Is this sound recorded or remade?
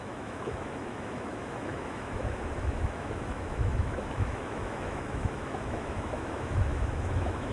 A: remade